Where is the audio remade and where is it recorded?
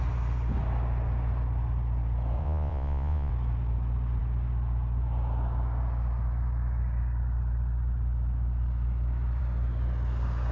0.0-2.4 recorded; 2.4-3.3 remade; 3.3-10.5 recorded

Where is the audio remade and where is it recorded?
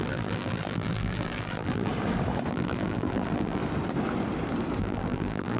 0.0-1.9 remade; 1.9-2.5 recorded; 2.5-3.6 remade; 3.6-4.8 recorded; 4.8-5.6 remade